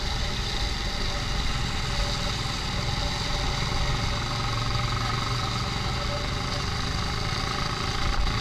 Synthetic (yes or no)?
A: no